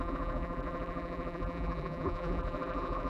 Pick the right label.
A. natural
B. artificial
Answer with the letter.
B